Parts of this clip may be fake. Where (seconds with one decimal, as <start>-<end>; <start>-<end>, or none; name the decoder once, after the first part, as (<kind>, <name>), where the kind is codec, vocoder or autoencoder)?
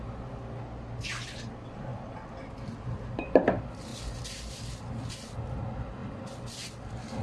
none